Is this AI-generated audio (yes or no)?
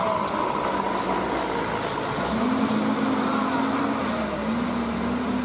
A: no